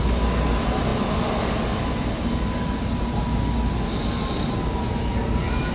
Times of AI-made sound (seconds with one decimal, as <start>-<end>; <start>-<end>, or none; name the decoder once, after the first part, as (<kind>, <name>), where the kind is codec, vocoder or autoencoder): none